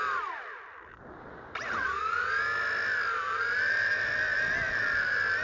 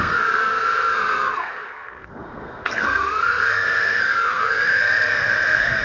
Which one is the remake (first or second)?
second